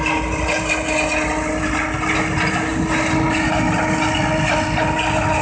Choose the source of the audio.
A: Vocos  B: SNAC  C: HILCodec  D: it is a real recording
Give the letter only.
D